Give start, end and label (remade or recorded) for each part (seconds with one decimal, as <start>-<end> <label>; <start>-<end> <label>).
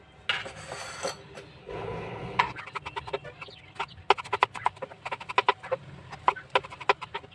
0.0-1.6 recorded; 1.6-2.4 remade; 2.4-7.3 recorded